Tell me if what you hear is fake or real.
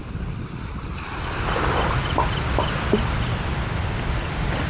fake